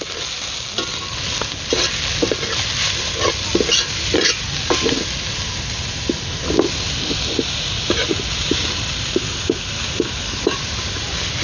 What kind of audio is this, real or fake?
real